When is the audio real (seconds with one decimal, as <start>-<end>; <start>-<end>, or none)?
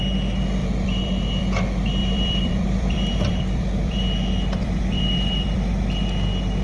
0.0-0.6; 1.4-2.0; 5.7-6.6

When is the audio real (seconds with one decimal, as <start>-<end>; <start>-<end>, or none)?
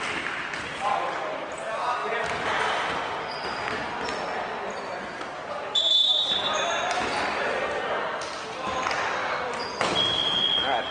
9.2-9.8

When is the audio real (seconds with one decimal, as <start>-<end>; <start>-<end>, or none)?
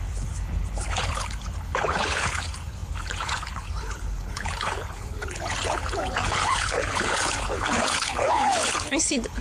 none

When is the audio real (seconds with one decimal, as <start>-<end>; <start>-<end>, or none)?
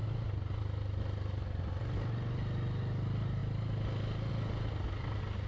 0.0-5.5